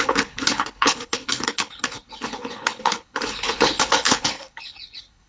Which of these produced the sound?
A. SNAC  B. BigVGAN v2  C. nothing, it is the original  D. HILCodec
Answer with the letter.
D